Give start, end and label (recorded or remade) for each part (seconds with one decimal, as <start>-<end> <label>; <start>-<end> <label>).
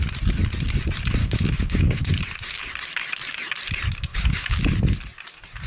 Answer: 0.0-1.2 recorded; 1.2-2.1 remade; 2.1-4.1 recorded; 4.1-4.6 remade; 4.6-5.7 recorded